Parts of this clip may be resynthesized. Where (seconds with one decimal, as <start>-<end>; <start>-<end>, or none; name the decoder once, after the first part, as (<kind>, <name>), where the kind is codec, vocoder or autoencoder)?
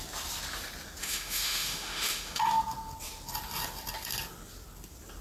1.0-2.4 (autoencoder, DAC-VAE)